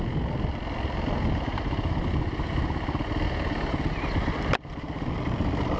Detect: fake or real real